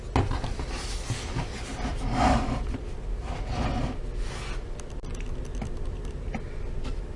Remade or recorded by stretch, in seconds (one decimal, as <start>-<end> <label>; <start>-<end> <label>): 0.0-7.2 recorded